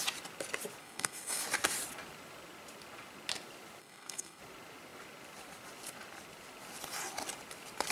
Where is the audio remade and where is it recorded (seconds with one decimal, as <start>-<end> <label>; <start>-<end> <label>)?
0.0-0.8 recorded; 0.8-1.4 remade; 1.4-3.8 recorded; 3.8-4.4 remade; 4.4-7.9 recorded